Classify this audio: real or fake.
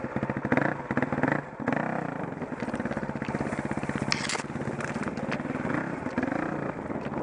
real